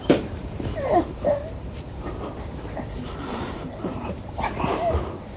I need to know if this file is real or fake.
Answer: fake